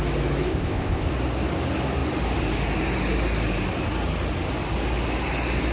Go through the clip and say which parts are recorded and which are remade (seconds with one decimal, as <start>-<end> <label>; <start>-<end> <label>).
0.0-0.5 recorded; 0.5-1.1 remade; 1.1-5.7 recorded